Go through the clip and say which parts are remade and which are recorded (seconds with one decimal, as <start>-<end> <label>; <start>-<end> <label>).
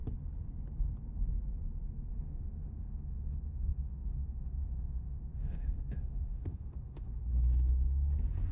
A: 0.0-2.1 recorded; 2.1-7.2 remade; 7.2-8.5 recorded